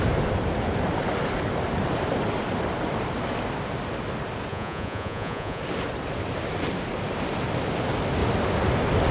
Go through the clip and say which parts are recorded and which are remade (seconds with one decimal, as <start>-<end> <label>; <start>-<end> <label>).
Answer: 0.0-4.5 recorded; 4.5-5.6 remade; 5.6-9.1 recorded